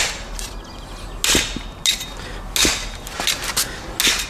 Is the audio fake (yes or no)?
no